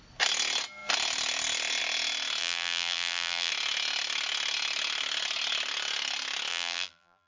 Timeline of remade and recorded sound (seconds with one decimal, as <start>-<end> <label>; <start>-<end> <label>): 0.0-2.4 recorded; 2.4-3.5 remade; 3.5-6.5 recorded; 6.5-7.3 remade